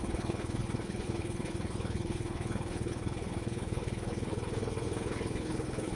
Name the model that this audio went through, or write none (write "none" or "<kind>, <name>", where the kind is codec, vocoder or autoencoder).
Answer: codec, HILCodec